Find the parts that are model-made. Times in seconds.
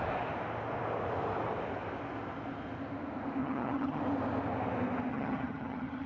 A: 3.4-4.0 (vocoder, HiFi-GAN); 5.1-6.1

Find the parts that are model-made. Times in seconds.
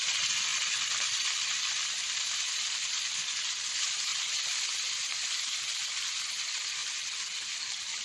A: 0.5-3.5 (vocoder, BigVGAN v2); 4.1-5.6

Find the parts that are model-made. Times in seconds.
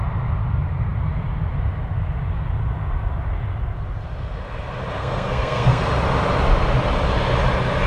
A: 5.0-5.8 (codec, SNAC)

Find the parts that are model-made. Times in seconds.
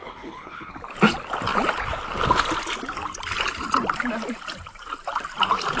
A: 0.0-0.7 (codec, HILCodec)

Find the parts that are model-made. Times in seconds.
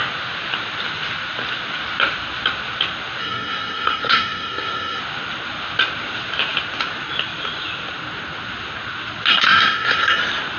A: 3.2-5.0 (codec, SNAC); 9.3-10.2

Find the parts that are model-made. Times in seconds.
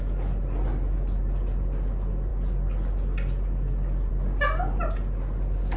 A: none